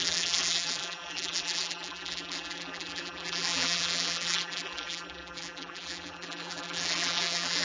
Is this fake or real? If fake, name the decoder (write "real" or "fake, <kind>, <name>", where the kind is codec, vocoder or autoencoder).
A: fake, vocoder, BigVGAN v2